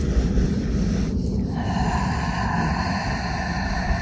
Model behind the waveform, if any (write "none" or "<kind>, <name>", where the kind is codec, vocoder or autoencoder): none